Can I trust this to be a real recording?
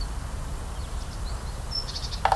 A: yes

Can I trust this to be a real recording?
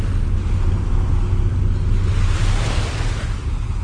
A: yes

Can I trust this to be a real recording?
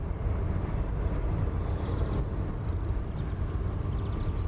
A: yes